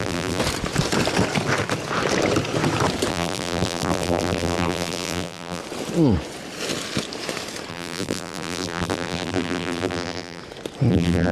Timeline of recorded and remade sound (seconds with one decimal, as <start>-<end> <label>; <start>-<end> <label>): 0.0-0.4 remade; 0.4-3.1 recorded; 3.1-5.6 remade; 5.6-7.7 recorded; 7.7-10.4 remade; 10.4-10.9 recorded; 10.9-11.3 remade